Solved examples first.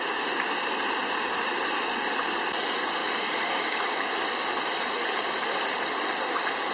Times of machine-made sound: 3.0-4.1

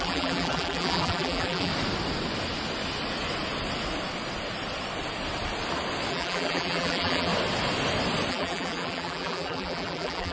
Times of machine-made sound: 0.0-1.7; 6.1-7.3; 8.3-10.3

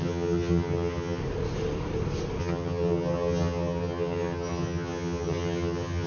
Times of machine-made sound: 0.0-1.2; 2.4-6.1

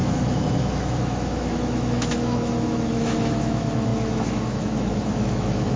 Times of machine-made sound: 0.0-5.8

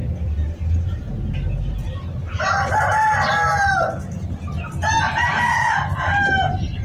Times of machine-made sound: none